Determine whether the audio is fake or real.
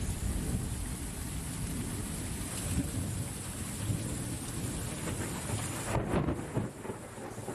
real